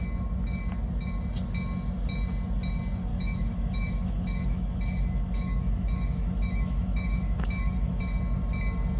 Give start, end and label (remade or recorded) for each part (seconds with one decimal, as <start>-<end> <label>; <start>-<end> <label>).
0.0-3.1 recorded; 3.1-8.0 remade; 8.0-9.0 recorded